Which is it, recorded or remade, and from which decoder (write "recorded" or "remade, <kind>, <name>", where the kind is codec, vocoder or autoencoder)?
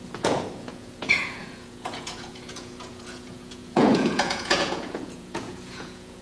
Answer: remade, vocoder, Vocos